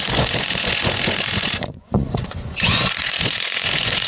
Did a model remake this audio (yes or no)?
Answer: yes